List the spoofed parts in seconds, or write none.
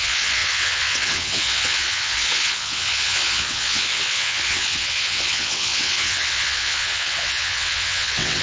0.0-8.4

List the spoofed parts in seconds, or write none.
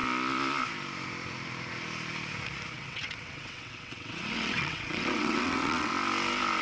2.7-5.9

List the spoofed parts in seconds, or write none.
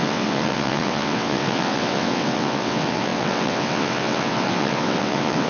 0.0-5.5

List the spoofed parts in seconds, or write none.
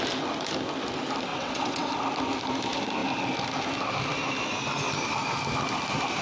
1.3-1.9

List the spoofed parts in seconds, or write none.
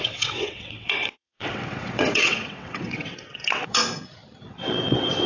0.0-3.8; 4.4-5.3